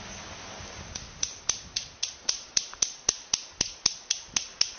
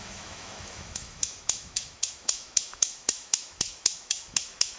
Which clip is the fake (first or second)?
second